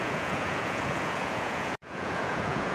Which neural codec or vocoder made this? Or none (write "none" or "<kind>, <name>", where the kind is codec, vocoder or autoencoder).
vocoder, Vocos